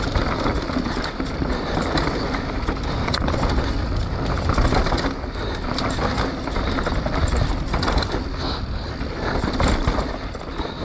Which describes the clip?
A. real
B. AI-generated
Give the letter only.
A